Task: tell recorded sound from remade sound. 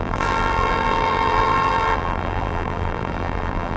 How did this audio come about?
remade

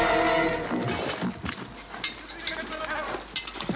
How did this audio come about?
recorded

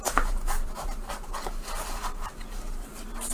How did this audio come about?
remade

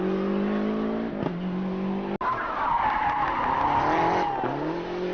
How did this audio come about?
recorded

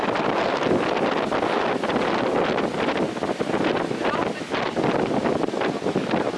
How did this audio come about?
recorded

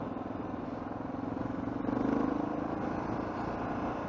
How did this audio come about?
recorded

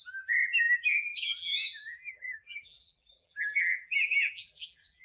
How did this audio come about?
remade